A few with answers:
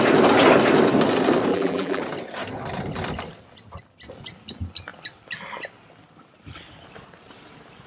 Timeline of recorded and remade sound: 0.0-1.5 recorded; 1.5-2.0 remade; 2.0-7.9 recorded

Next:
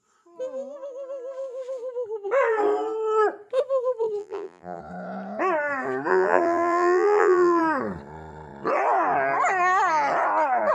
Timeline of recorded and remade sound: 0.0-4.2 recorded; 4.2-4.8 remade; 4.8-6.1 recorded; 6.1-7.6 remade; 7.6-10.7 recorded

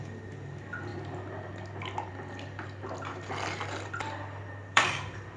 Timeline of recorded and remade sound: 0.0-0.9 remade; 0.9-2.1 recorded; 2.1-5.4 remade

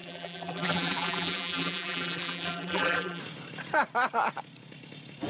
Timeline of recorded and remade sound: 0.0-3.2 remade; 3.2-5.3 recorded

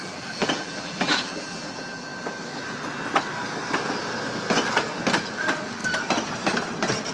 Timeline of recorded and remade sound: 0.0-2.1 remade; 2.1-5.2 recorded; 5.2-5.8 remade; 5.8-7.1 recorded

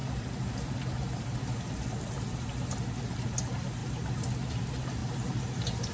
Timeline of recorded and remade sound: 0.0-3.8 recorded; 3.8-4.3 remade; 4.3-5.0 recorded; 5.0-5.9 remade